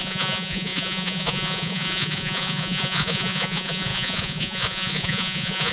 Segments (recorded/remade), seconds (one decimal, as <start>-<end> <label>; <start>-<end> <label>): 0.0-5.7 remade